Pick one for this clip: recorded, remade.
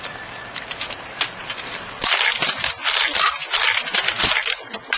recorded